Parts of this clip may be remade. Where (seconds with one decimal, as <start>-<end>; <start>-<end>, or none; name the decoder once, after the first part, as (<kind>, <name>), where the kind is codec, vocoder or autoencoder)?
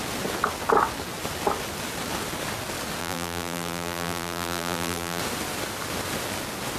3.0-5.2 (vocoder, BigVGAN v2)